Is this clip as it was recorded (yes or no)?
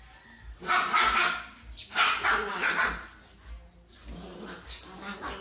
yes